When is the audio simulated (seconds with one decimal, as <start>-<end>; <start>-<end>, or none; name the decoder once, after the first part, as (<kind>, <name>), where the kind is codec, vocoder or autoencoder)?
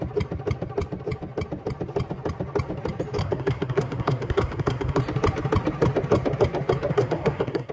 3.2-5.0 (codec, SNAC); 6.9-7.7